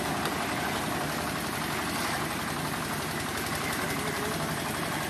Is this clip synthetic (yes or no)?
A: no